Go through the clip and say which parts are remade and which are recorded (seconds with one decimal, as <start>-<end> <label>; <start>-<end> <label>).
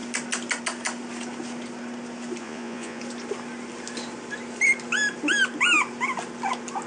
0.0-2.4 recorded; 2.4-3.0 remade; 3.0-6.9 recorded